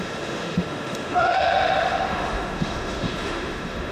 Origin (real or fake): fake